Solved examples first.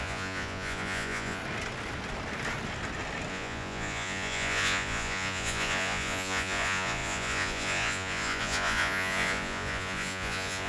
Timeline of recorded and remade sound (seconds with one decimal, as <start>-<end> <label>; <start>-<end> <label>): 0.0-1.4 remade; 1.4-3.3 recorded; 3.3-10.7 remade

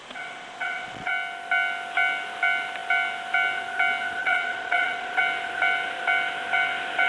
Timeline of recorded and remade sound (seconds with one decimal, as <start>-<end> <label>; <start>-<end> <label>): 0.0-1.1 remade; 1.1-4.2 recorded; 4.2-5.2 remade; 5.2-7.1 recorded

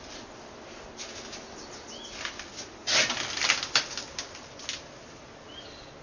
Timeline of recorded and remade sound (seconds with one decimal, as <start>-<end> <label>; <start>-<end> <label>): 0.0-6.0 recorded

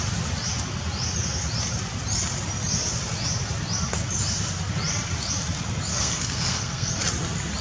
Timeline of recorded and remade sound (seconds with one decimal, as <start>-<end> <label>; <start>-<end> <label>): 0.0-5.9 recorded; 5.9-6.9 remade; 6.9-7.6 recorded

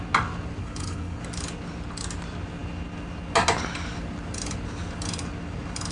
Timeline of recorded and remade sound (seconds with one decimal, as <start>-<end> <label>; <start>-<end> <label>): 0.0-0.6 recorded; 0.6-1.2 remade; 1.2-5.9 recorded

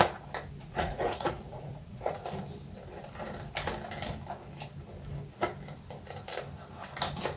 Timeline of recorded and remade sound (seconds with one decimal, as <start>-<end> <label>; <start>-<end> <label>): 0.0-0.6 recorded; 0.6-2.2 remade; 2.2-7.4 recorded

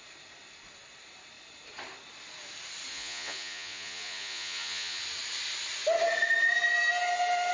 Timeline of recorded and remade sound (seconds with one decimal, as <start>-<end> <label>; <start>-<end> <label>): 0.0-2.9 recorded; 2.9-5.0 remade; 5.0-7.5 recorded

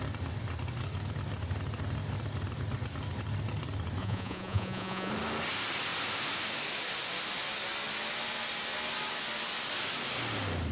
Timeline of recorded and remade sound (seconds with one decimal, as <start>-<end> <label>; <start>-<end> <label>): 0.0-4.0 recorded; 4.0-5.1 remade; 5.1-10.7 recorded